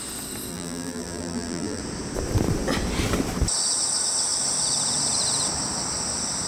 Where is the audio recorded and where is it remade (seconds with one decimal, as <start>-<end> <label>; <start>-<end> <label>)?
0.0-0.5 recorded; 0.5-1.8 remade; 1.8-6.5 recorded